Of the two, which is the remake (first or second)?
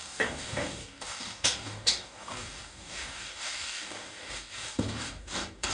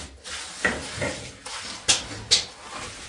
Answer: first